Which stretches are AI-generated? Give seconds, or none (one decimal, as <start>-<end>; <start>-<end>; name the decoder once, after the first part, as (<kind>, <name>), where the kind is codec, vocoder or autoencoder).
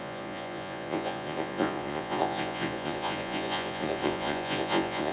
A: 0.0-5.1 (vocoder, Vocos)